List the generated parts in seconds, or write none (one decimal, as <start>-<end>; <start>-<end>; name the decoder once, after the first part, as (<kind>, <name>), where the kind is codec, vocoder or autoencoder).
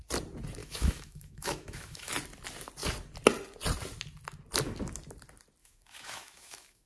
0.6-2.1 (autoencoder, DAC-VAE); 5.6-6.9